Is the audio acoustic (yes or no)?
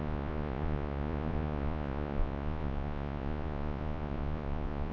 no